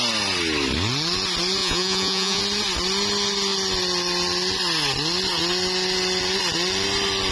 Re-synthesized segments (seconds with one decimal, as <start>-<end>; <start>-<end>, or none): 1.6-2.4